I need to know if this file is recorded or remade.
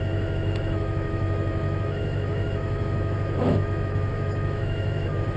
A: remade